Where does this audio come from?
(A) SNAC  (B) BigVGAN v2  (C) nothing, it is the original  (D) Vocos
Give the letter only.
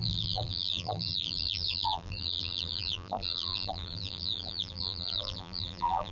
B